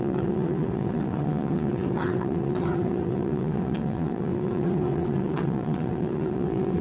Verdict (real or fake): fake